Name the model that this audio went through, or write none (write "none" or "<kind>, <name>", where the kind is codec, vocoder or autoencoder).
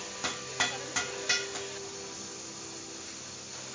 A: none